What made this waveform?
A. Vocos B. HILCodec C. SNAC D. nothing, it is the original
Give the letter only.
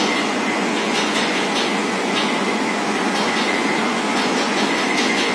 A